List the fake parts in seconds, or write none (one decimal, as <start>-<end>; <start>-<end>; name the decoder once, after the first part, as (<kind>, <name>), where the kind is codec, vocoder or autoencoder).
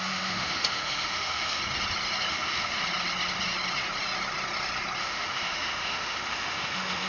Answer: 0.0-1.6 (autoencoder, DAC-VAE); 2.3-2.8; 5.0-7.1